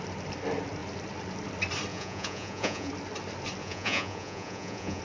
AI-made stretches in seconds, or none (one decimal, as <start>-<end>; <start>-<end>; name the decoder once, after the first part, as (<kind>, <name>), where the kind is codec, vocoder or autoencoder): 1.9-2.9 (vocoder, Vocos); 3.6-5.0